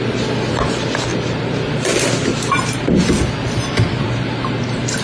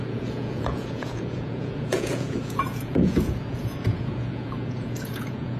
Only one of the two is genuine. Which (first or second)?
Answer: first